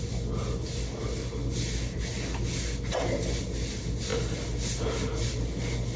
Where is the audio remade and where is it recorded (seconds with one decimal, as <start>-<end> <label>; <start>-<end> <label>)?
0.0-6.0 recorded

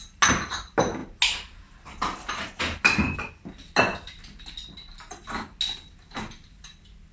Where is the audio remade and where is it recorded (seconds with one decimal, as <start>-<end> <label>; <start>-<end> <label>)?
0.0-7.1 recorded

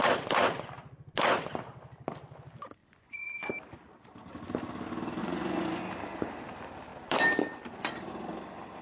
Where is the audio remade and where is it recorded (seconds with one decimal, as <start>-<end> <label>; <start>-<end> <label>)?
0.0-2.8 recorded; 2.8-3.5 remade; 3.5-5.2 recorded; 5.2-5.8 remade; 5.8-8.8 recorded

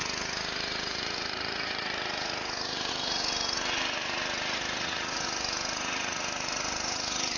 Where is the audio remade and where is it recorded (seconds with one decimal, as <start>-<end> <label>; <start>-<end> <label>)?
0.0-7.4 remade

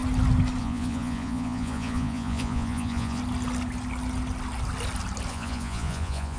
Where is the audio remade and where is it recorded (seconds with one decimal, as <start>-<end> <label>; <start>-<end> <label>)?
0.0-0.6 recorded; 0.6-3.2 remade; 3.2-5.3 recorded; 5.3-6.4 remade

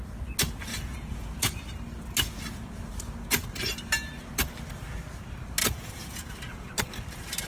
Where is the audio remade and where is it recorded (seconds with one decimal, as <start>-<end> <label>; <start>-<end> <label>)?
0.0-0.7 recorded; 0.7-1.6 remade; 1.6-5.6 recorded; 5.6-6.7 remade; 6.7-7.5 recorded